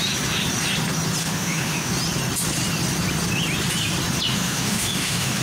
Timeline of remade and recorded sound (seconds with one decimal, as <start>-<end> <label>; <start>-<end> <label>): 0.0-1.2 recorded; 1.2-1.9 remade; 1.9-4.3 recorded; 4.3-5.4 remade